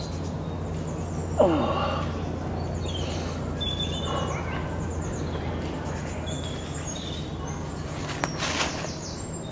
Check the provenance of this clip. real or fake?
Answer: real